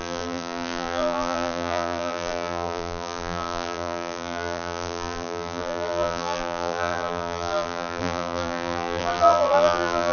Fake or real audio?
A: fake